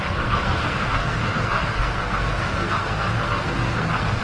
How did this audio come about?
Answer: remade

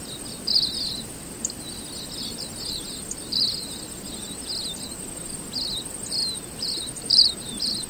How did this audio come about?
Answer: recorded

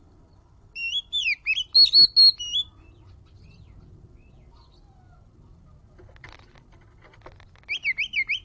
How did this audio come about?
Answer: recorded